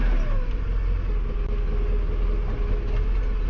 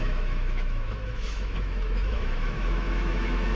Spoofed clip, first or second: second